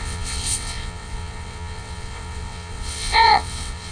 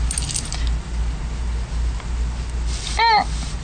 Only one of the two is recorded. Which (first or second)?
second